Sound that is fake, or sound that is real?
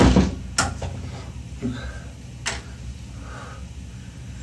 real